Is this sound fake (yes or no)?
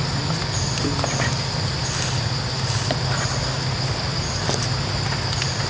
no